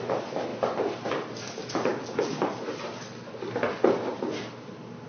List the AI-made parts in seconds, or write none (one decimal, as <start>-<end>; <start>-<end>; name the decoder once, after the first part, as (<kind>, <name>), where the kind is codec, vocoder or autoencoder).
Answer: none